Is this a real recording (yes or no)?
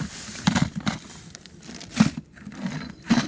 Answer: no